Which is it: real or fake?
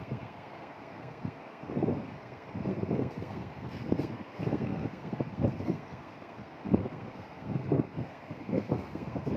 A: fake